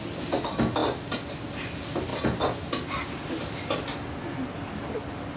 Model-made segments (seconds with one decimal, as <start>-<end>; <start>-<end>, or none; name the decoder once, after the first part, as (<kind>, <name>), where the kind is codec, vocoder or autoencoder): none